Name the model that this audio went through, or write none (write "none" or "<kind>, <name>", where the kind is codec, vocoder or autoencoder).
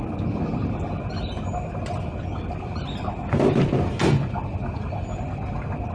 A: none